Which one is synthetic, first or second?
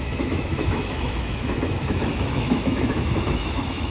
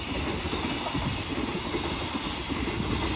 first